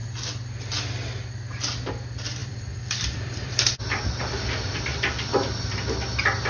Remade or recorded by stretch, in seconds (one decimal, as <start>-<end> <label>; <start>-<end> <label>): 0.0-2.4 recorded; 2.4-4.0 remade; 4.0-4.9 recorded; 4.9-5.6 remade; 5.6-6.5 recorded

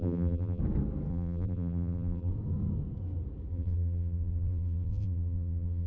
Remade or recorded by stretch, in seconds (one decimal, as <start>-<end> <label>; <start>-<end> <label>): 0.0-0.6 remade; 0.6-1.1 recorded; 1.1-2.3 remade; 2.3-3.5 recorded; 3.5-5.9 remade

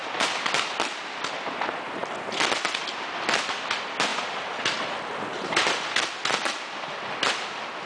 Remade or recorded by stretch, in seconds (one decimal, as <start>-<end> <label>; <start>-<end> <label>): 0.0-1.5 remade; 1.5-4.1 recorded; 4.1-5.6 remade; 5.6-7.9 recorded

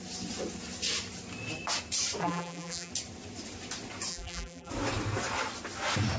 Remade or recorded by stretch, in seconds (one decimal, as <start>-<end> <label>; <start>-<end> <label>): 0.0-2.2 recorded; 2.2-2.9 remade; 2.9-4.1 recorded; 4.1-4.7 remade; 4.7-6.2 recorded

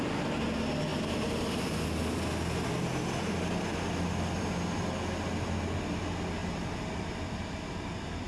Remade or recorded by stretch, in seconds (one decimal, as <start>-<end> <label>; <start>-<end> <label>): 0.0-6.4 recorded; 6.4-8.3 remade

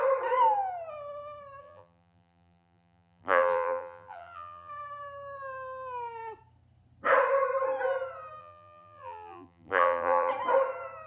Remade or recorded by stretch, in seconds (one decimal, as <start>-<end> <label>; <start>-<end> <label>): 0.0-1.6 recorded; 1.6-4.7 remade; 4.7-8.4 recorded; 8.4-10.3 remade; 10.3-11.1 recorded